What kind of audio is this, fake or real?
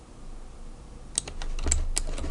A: real